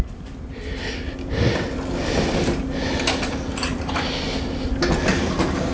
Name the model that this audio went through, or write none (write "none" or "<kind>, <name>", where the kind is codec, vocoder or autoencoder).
none